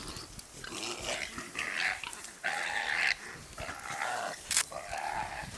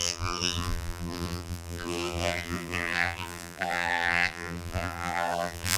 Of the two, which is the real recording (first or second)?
first